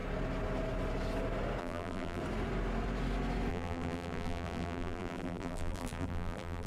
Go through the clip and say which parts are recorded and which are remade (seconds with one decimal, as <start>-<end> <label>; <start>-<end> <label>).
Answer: 0.0-1.6 recorded; 1.6-2.2 remade; 2.2-3.5 recorded; 3.5-6.7 remade